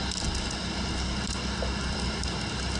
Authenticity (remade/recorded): recorded